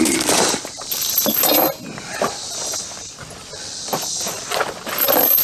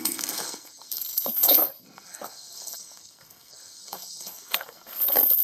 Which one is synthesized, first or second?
second